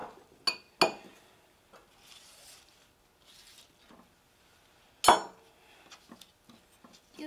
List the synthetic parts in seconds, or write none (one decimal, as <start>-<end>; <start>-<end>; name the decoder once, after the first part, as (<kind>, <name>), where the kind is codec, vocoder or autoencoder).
none